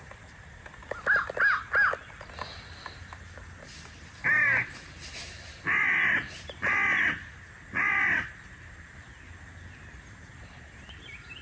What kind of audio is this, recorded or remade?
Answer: recorded